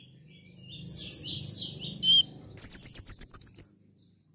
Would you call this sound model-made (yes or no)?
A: no